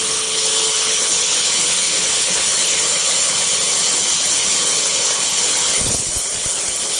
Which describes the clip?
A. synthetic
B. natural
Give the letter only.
A